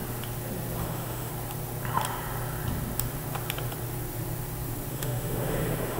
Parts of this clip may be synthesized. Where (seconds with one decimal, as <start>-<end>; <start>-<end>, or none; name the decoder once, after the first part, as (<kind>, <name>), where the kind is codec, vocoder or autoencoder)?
0.8-1.3 (autoencoder, DAC-VAE); 4.9-6.0

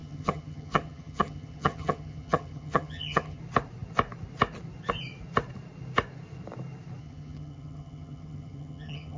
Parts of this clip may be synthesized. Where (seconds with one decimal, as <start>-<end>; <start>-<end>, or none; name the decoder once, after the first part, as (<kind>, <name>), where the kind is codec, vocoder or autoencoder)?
0.0-3.4 (vocoder, HiFi-GAN); 7.0-9.2

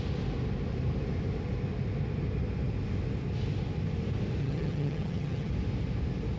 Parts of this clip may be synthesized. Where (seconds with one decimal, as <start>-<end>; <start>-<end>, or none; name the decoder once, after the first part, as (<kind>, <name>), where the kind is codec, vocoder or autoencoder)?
4.4-5.5 (vocoder, HiFi-GAN)

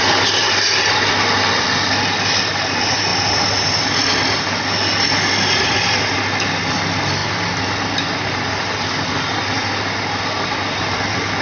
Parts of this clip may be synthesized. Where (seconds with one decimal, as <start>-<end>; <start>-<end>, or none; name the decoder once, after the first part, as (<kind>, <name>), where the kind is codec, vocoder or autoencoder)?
none

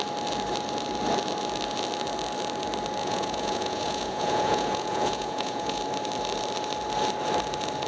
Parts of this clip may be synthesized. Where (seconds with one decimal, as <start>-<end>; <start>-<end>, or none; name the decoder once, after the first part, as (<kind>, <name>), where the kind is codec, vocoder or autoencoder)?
3.0-5.8 (vocoder, Vocos)

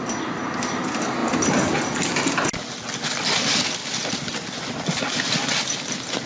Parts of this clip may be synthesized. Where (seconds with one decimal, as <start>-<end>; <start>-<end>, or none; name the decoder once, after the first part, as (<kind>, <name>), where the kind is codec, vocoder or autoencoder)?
none

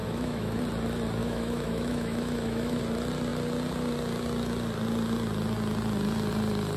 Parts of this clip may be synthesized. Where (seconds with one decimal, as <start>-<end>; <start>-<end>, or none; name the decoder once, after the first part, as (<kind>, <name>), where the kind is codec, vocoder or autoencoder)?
0.0-0.6 (autoencoder, DAC-VAE); 1.2-2.8

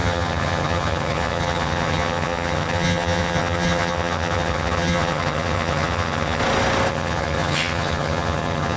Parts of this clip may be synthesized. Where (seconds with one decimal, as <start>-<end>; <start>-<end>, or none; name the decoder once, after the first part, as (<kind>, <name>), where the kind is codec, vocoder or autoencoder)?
0.0-6.4 (vocoder, HiFi-GAN); 6.9-8.8